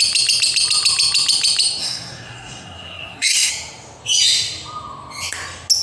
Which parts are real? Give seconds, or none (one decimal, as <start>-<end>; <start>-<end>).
0.0-1.8; 3.5-5.8